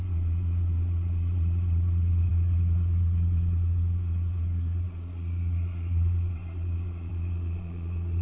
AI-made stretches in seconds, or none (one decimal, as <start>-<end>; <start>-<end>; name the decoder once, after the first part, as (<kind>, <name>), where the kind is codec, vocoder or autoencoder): 0.0-8.2 (vocoder, Vocos)